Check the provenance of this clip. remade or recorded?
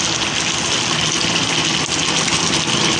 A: recorded